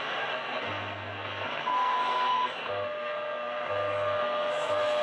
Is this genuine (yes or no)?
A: no